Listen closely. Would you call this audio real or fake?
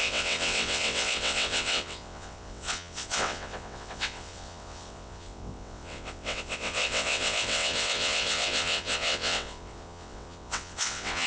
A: fake